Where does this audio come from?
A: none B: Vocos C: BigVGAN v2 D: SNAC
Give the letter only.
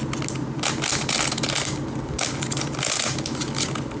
A